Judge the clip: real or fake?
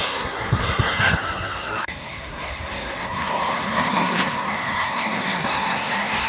fake